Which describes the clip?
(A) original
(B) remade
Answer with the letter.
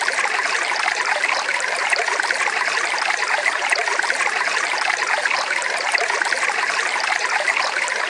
B